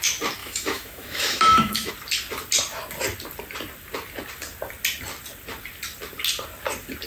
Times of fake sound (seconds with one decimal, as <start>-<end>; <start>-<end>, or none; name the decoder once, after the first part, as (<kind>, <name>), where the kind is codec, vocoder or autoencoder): 0.4-1.9 (autoencoder, DAC-VAE)